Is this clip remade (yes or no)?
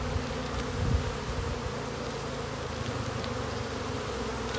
no